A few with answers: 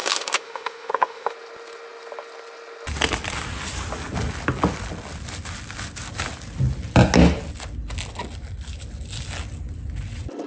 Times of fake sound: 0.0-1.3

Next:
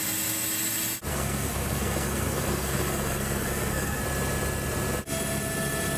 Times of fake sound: 1.1-4.0

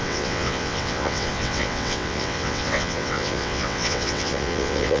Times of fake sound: 0.0-5.0

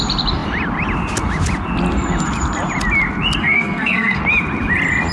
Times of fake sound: 3.4-4.2

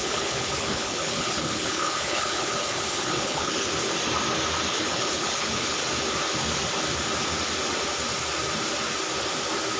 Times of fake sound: 0.0-3.7; 4.7-5.8

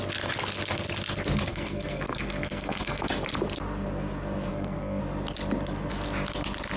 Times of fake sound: 1.5-3.1; 4.5-5.0

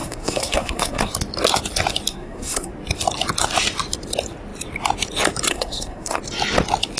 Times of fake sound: 0.0-1.1; 2.1-2.7; 5.5-6.2